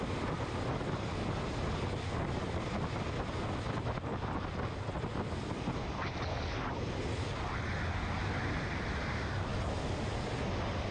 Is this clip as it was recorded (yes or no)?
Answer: yes